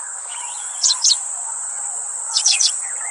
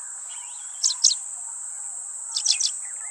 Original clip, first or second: second